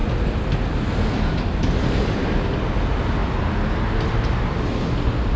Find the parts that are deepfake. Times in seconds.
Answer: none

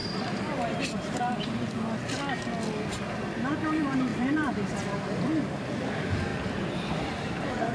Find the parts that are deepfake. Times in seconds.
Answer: 0.0-1.5 (vocoder, BigVGAN v2); 4.1-4.7; 6.3-6.9

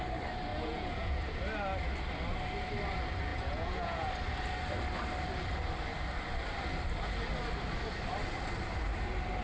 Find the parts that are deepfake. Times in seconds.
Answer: 0.5-1.3 (vocoder, Vocos); 3.3-4.1

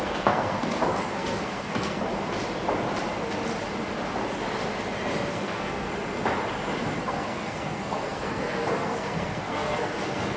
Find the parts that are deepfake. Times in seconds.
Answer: 0.0-2.1 (codec, SNAC); 5.3-5.9; 7.0-10.4